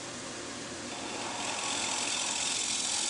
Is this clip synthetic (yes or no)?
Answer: no